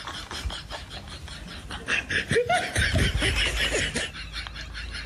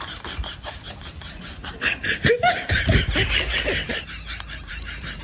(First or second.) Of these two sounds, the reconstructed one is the second